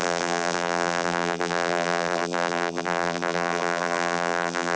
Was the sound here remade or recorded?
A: remade